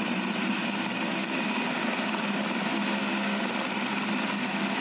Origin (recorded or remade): recorded